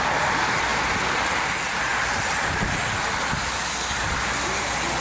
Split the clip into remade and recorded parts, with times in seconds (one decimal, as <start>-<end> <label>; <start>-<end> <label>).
0.0-5.0 recorded